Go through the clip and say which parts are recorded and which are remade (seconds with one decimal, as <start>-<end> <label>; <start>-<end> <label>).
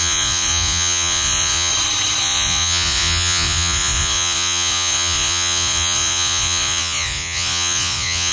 0.0-1.7 remade; 1.7-2.2 recorded; 2.2-8.3 remade